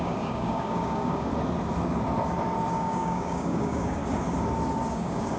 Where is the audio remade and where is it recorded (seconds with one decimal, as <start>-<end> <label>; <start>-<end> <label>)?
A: 0.0-1.3 remade; 1.3-2.7 recorded; 2.7-4.0 remade; 4.0-4.9 recorded; 4.9-5.4 remade